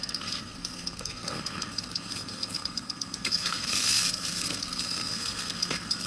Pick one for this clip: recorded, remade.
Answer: remade